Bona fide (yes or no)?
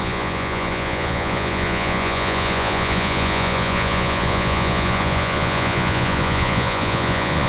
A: no